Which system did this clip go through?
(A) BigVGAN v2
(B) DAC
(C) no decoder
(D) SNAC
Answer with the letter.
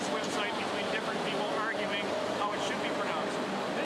C